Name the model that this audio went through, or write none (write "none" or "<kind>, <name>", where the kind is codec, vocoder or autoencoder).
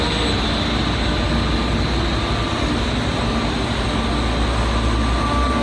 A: none